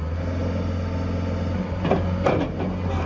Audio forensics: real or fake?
real